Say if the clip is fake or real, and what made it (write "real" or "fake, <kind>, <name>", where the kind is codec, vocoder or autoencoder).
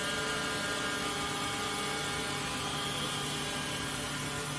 real